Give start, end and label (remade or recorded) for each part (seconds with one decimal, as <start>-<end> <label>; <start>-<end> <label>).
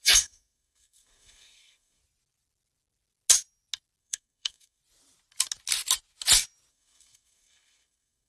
0.0-2.0 remade; 2.0-4.0 recorded; 4.0-4.8 remade; 4.8-6.7 recorded; 6.7-8.3 remade